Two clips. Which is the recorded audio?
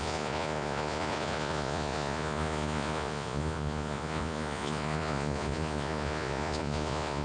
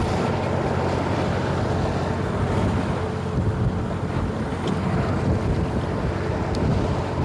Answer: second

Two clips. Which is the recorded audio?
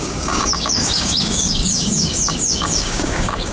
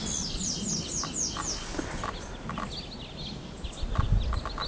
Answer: second